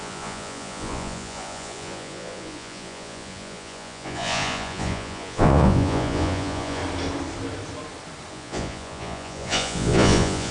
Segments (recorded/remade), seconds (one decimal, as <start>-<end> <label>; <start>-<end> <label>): 0.0-6.8 remade; 6.8-8.3 recorded; 8.3-10.5 remade